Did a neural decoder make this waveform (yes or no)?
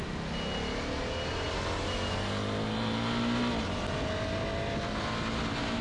no